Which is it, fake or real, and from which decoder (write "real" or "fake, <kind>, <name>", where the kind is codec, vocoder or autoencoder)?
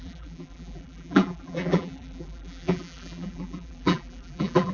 fake, vocoder, BigVGAN v2